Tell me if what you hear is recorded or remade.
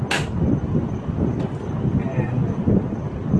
recorded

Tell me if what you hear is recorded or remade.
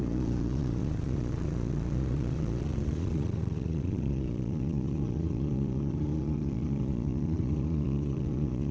remade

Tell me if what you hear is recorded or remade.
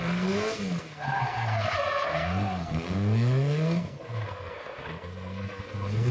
remade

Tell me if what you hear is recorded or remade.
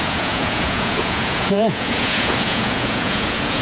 remade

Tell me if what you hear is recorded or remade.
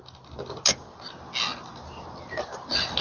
recorded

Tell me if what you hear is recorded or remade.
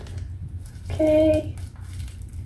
recorded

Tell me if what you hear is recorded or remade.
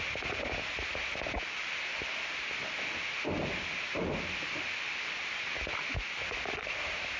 recorded